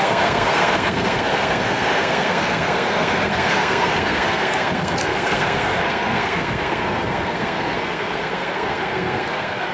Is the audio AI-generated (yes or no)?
yes